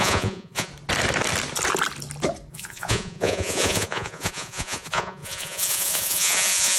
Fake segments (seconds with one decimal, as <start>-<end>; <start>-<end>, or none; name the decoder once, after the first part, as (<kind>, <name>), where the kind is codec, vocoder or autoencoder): 0.0-0.7 (vocoder, Vocos); 2.5-6.8